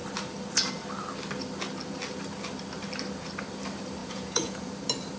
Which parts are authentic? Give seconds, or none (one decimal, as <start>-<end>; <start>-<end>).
0.0-4.0; 4.7-5.2